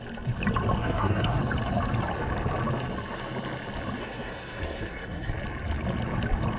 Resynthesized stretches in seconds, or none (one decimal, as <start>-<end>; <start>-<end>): 0.8-1.4; 4.0-5.3